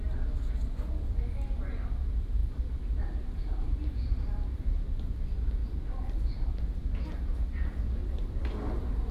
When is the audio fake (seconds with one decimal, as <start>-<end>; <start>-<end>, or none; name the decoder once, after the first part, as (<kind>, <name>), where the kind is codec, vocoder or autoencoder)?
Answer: 2.4-5.1 (vocoder, BigVGAN v2); 8.0-8.6